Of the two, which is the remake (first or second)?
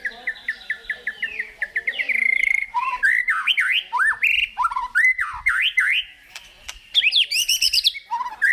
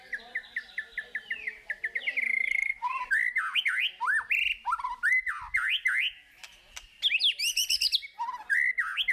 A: first